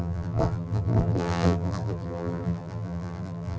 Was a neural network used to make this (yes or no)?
yes